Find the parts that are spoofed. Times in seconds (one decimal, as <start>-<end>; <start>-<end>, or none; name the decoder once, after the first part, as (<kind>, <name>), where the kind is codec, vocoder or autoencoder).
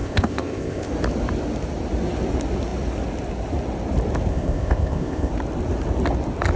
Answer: 0.0-0.9 (codec, ZipCodec); 4.3-5.3